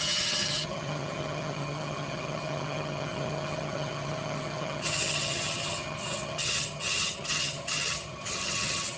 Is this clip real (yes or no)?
no